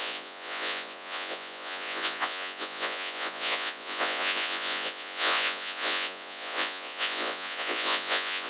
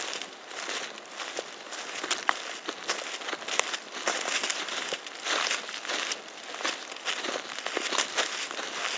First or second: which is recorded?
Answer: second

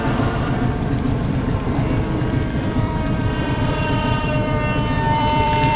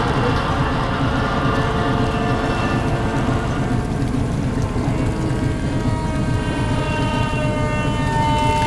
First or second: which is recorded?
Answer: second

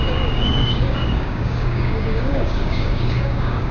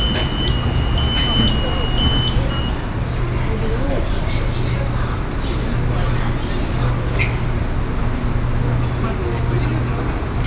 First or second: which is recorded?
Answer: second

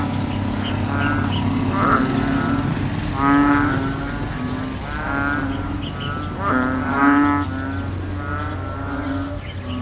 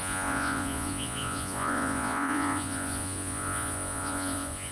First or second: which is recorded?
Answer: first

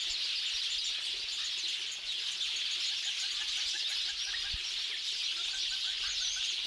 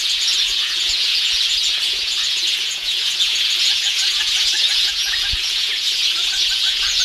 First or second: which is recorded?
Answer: first